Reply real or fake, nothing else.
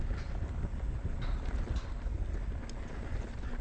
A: real